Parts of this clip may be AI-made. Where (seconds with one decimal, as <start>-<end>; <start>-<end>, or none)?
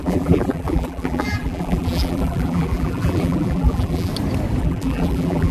0.0-4.1; 4.6-5.5